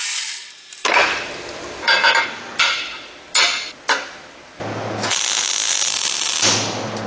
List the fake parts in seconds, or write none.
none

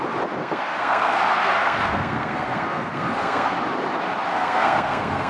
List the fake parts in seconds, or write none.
0.4-3.5 (codec, SNAC); 4.3-5.3

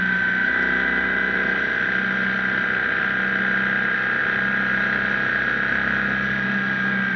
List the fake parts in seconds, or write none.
none

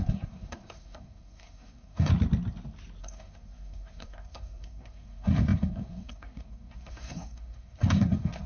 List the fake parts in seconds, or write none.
0.0-2.1 (codec, SNAC); 3.0-8.5